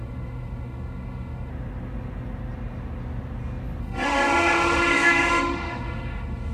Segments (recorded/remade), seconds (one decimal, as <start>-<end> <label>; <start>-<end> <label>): 0.0-1.5 remade; 1.5-3.8 recorded; 3.8-6.5 remade